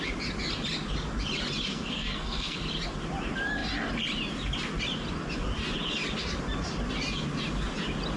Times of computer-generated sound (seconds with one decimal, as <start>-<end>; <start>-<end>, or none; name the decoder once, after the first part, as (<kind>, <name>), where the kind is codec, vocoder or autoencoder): 1.7-2.6 (codec, SNAC)